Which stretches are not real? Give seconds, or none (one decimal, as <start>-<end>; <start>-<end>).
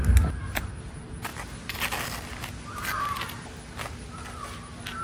none